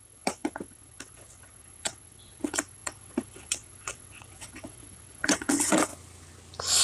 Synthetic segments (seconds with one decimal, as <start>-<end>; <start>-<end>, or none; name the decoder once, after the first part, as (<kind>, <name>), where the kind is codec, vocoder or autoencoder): 0.0-5.9 (vocoder, WaveNeXt)